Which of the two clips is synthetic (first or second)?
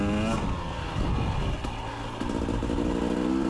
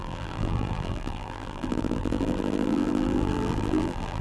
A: second